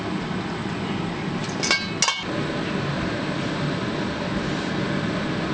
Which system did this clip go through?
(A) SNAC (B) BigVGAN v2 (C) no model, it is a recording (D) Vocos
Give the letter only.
C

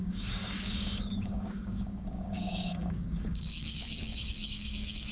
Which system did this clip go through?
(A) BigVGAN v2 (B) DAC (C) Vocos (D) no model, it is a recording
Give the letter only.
B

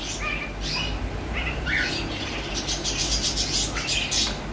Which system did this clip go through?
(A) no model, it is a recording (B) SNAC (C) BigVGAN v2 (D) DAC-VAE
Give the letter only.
A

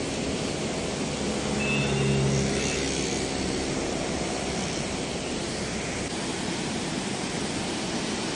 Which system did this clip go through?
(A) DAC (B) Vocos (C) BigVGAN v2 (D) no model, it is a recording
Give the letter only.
D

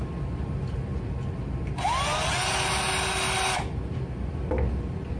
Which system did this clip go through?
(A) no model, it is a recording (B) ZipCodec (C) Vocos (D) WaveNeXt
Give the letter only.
A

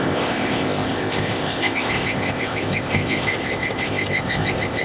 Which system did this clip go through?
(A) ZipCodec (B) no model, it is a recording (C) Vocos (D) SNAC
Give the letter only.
A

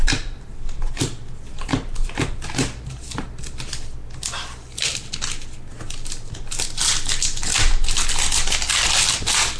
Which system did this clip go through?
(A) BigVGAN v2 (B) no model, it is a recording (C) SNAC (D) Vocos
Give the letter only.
B